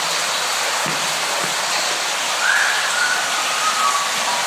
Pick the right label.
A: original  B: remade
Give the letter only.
A